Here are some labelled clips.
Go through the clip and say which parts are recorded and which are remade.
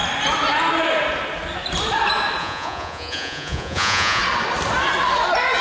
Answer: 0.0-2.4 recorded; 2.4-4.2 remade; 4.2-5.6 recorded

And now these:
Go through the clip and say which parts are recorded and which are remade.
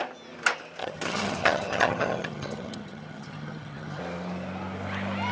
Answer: 0.0-0.8 recorded; 0.8-4.0 remade; 4.0-5.3 recorded